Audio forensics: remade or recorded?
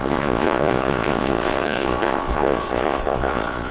remade